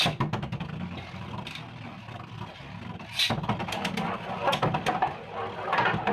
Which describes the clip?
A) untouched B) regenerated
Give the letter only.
A